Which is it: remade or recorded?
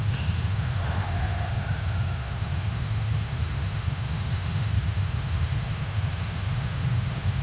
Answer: remade